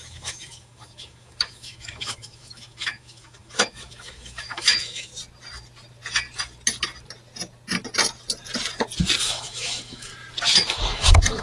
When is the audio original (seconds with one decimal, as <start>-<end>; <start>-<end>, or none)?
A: 5.1-9.2; 10.1-10.7